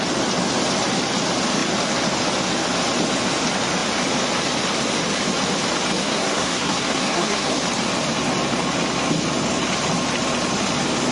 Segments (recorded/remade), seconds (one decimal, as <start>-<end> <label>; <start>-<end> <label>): 0.0-6.0 recorded; 6.0-7.5 remade; 7.5-11.1 recorded